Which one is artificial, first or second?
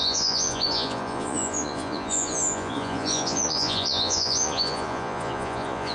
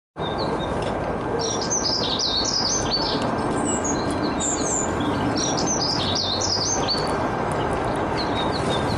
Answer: first